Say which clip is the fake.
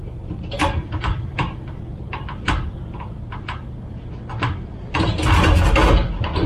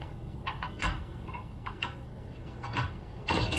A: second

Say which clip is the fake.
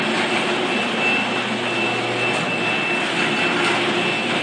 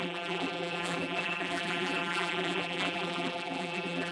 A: second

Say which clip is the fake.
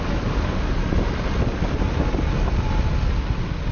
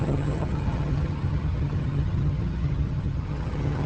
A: second